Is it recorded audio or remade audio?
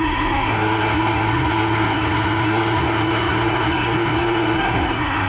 remade